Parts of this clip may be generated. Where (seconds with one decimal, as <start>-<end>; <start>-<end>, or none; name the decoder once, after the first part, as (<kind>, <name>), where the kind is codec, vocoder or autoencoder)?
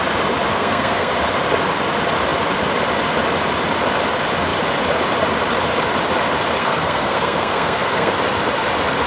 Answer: 0.5-1.1 (codec, SNAC); 6.6-8.1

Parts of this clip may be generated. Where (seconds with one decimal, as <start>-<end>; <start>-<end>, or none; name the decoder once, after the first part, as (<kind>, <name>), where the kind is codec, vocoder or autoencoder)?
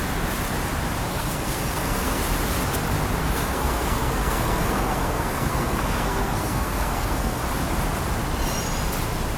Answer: 1.1-2.2 (codec, SNAC); 3.2-7.4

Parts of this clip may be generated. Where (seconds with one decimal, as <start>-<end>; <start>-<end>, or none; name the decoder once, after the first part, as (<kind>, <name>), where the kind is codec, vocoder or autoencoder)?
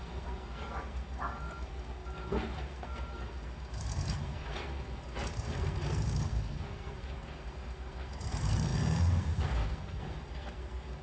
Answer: 0.0-11.0 (codec, SNAC)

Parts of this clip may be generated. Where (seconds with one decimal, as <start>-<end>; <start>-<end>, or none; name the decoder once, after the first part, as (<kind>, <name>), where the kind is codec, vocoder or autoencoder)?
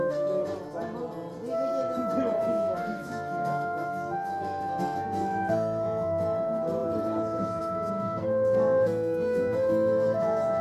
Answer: 0.0-0.4 (codec, SNAC); 2.4-10.6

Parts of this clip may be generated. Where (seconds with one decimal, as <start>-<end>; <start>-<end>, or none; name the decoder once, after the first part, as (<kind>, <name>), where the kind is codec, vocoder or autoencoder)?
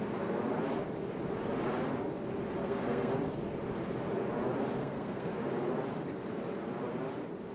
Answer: 2.6-3.1 (codec, SNAC); 4.8-5.3